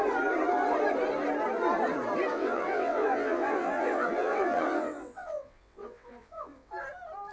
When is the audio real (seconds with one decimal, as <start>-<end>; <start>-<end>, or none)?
0.0-2.3; 6.7-7.3